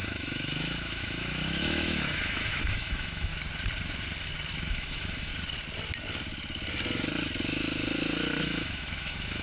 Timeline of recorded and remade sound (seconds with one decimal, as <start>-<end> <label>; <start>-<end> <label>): 0.0-3.3 remade; 3.3-4.7 recorded; 4.7-5.3 remade; 5.3-8.4 recorded; 8.4-9.4 remade